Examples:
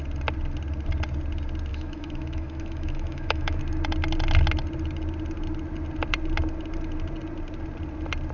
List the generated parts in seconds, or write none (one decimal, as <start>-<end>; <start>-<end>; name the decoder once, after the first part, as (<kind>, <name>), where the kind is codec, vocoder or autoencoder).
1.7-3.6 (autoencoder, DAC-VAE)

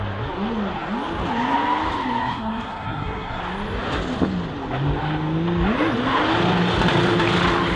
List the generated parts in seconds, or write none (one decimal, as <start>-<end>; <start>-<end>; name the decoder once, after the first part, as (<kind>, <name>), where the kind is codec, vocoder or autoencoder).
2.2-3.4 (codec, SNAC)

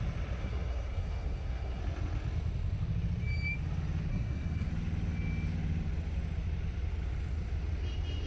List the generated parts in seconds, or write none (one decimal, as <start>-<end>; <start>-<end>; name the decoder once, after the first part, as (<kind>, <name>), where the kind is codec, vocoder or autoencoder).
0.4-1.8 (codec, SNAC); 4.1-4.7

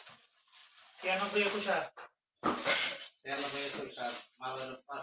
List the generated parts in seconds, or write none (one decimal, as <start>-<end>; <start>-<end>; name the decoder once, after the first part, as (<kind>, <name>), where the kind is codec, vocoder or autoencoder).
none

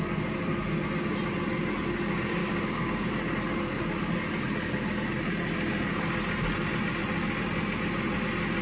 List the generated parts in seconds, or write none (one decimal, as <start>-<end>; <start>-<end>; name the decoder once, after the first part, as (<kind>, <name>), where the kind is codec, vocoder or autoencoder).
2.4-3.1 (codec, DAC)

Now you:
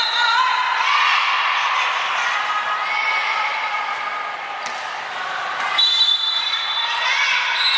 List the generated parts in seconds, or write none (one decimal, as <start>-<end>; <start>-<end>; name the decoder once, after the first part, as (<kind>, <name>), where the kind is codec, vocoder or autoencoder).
0.7-2.5 (vocoder, BigVGAN v2); 3.5-7.1

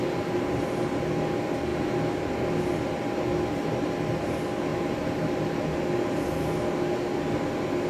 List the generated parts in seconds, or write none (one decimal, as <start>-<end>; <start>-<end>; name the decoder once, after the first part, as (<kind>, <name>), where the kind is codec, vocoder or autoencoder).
0.0-0.6 (vocoder, BigVGAN v2); 4.7-5.7